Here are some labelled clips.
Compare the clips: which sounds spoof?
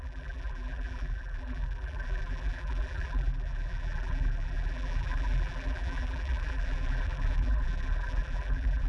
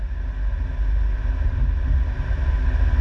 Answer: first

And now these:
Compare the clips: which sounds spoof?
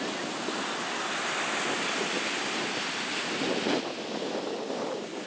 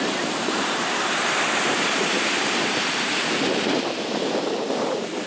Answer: second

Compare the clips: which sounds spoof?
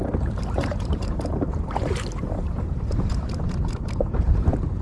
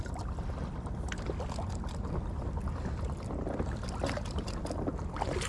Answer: first